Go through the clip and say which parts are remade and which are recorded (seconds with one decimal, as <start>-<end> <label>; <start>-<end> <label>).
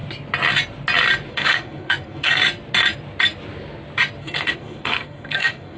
0.0-1.3 recorded; 1.3-2.4 remade; 2.4-4.2 recorded; 4.2-5.8 remade